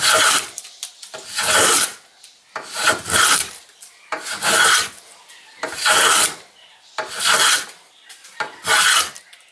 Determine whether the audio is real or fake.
real